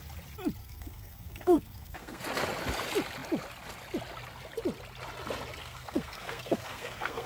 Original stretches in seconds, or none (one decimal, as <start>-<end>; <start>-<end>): 0.0-0.6; 2.2-5.6